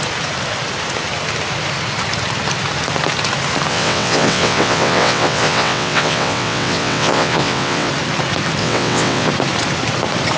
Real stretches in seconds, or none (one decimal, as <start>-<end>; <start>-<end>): 0.0-3.7; 7.9-8.6; 9.3-10.4